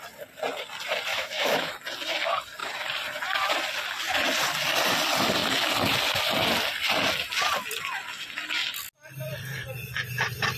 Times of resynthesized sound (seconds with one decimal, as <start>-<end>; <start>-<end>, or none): 1.1-1.7